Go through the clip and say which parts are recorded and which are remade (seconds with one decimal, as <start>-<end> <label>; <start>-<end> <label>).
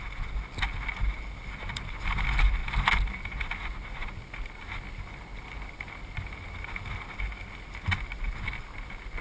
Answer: 0.0-9.2 recorded